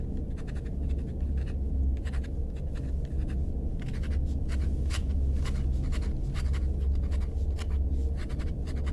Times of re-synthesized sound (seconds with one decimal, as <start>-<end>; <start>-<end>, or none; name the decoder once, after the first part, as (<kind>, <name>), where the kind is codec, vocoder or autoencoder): none